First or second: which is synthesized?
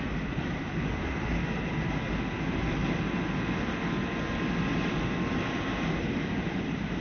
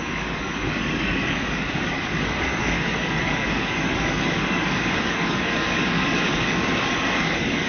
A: second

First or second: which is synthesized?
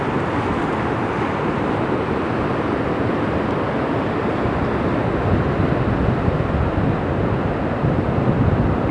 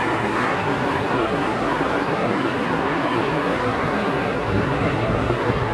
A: second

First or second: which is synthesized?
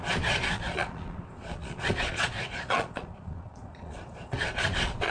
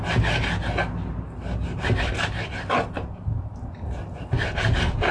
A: first